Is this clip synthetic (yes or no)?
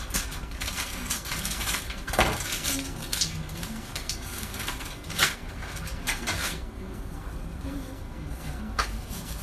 yes